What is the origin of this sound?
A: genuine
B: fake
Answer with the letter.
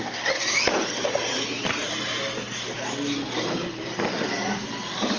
A